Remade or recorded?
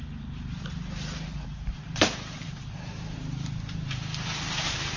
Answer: remade